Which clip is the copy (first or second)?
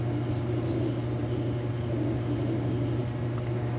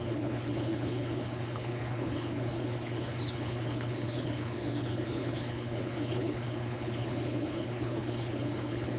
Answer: second